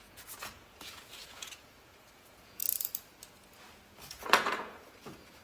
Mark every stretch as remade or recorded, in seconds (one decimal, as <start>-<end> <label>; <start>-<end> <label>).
0.0-2.6 remade; 2.6-4.1 recorded; 4.1-5.4 remade